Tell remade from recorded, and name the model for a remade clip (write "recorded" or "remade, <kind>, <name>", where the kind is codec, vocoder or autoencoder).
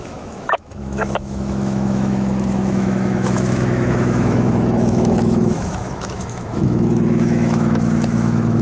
remade, autoencoder, DAC-VAE